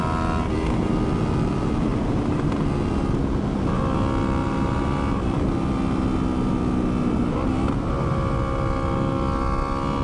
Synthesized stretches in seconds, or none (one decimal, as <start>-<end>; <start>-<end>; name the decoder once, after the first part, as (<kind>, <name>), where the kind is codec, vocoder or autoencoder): 1.9-2.5 (vocoder, BigVGAN v2); 4.4-5.2